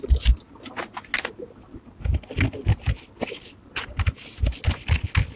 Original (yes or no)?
yes